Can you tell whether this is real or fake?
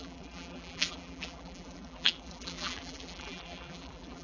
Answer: fake